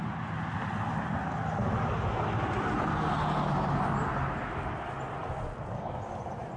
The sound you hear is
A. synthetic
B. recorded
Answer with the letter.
B